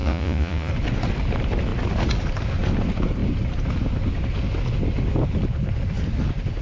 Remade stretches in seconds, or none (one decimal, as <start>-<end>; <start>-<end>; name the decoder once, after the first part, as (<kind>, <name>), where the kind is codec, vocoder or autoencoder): 0.0-0.7 (vocoder, Vocos)